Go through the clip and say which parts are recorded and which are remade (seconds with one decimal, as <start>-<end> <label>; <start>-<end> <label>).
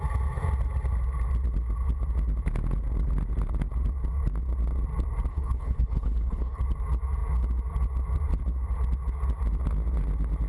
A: 0.0-5.3 recorded; 5.3-6.6 remade; 6.6-10.5 recorded